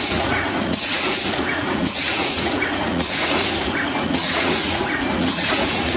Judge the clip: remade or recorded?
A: remade